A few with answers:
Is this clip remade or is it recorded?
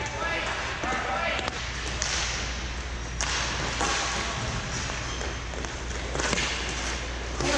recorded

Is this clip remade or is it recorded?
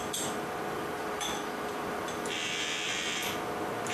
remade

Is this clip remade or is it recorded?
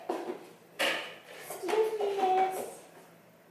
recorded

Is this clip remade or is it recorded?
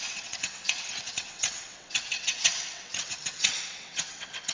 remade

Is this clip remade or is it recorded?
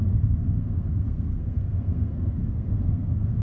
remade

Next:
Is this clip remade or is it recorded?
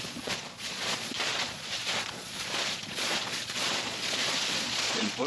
remade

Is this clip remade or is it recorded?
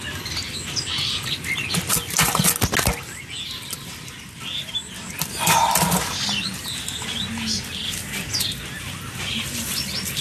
recorded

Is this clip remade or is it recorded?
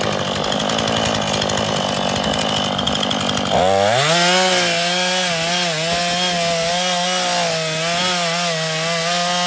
recorded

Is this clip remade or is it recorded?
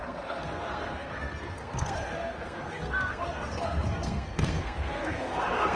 remade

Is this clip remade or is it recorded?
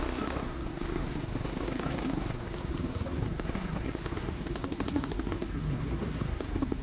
remade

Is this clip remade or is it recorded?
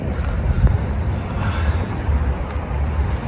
remade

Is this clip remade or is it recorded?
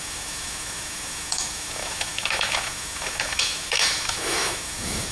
remade